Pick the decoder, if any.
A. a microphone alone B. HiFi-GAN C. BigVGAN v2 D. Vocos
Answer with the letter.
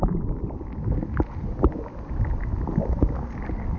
A